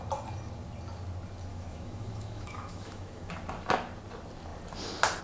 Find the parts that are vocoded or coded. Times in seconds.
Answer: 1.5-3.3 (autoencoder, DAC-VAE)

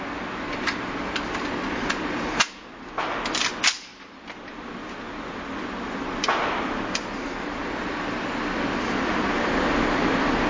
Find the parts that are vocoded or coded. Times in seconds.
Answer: none

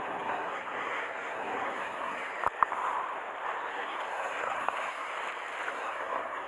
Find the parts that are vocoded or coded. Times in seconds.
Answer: 0.0-2.3 (codec, SNAC); 3.7-5.1; 5.7-6.5

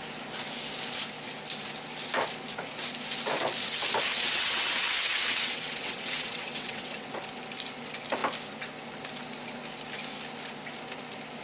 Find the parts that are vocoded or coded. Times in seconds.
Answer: 4.1-7.1 (vocoder, WaveNeXt)

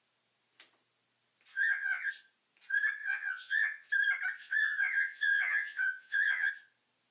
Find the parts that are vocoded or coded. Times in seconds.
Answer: 1.5-2.1 (vocoder, Vocos); 3.0-3.9; 4.4-6.5

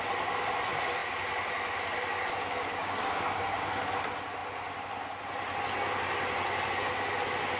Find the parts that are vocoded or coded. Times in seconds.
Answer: 2.8-3.7 (codec, DAC)

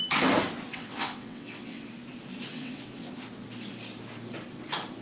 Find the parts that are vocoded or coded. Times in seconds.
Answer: 0.7-1.9 (vocoder, WaveNeXt); 2.5-3.1